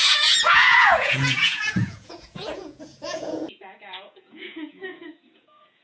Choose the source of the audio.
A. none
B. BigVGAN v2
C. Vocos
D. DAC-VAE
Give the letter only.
C